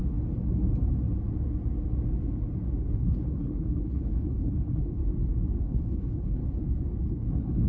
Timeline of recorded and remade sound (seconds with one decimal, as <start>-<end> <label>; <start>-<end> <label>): 0.0-2.8 recorded; 2.8-5.0 remade; 5.0-5.6 recorded; 5.6-6.4 remade; 6.4-7.0 recorded; 7.0-7.7 remade